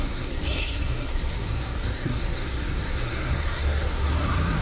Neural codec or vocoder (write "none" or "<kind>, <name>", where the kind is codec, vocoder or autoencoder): codec, SNAC